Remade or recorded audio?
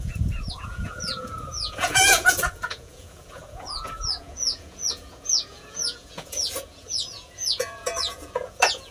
remade